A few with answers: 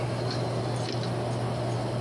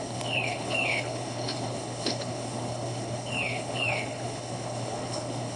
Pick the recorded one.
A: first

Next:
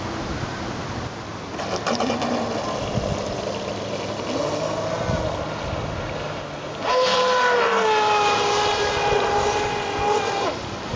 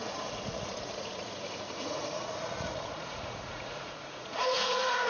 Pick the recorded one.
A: first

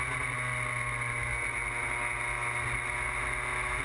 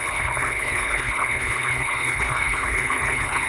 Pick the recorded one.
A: first